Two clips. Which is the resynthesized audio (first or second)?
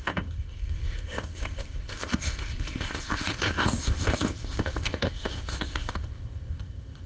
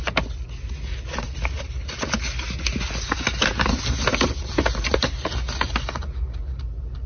first